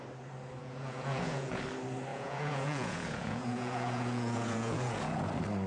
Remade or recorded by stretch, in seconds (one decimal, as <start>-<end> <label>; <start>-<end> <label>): 0.0-0.6 recorded; 0.6-1.6 remade; 1.6-2.1 recorded; 2.1-5.3 remade; 5.3-5.7 recorded